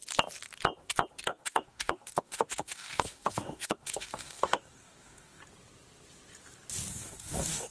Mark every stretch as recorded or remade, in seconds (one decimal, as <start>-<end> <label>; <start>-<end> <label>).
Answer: 0.0-1.2 recorded; 1.2-5.4 remade; 5.4-6.9 recorded; 6.9-7.7 remade